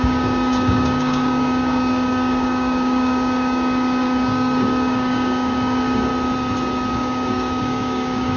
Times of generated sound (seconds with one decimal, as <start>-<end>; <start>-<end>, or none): 0.0-6.1; 6.9-8.4